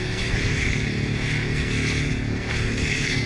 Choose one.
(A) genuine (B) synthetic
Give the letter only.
B